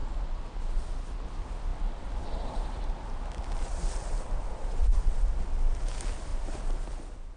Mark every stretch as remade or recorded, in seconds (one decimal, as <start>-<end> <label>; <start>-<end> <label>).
0.0-7.4 recorded